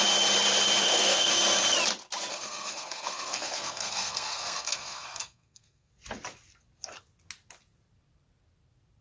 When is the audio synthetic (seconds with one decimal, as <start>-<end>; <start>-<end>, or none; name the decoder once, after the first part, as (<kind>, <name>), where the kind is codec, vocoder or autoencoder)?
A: 0.8-1.3 (codec, SNAC); 2.3-5.9